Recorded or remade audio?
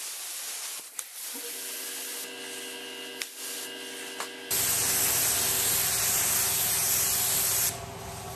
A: recorded